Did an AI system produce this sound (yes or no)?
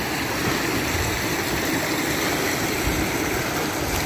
no